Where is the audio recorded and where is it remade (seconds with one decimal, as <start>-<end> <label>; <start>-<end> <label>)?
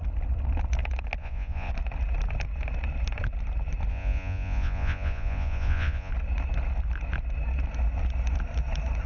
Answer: 0.0-1.2 recorded; 1.2-1.7 remade; 1.7-3.9 recorded; 3.9-6.1 remade; 6.1-9.1 recorded